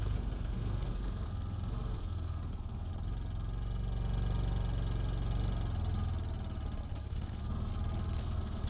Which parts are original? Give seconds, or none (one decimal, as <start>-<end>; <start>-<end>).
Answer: 2.9-7.0; 7.7-8.2